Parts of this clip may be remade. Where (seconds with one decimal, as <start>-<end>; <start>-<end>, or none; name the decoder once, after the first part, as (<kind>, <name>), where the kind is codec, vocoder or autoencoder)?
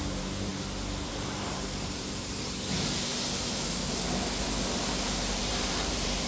0.0-0.5 (vocoder, BigVGAN v2); 1.1-3.1; 5.0-6.3